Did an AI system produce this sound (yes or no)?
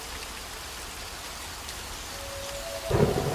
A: no